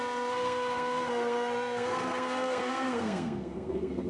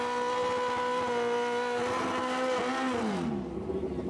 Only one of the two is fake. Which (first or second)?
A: first